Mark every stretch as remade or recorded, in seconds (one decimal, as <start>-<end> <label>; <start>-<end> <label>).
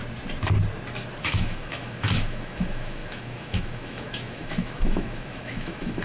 0.0-1.2 recorded; 1.2-6.0 remade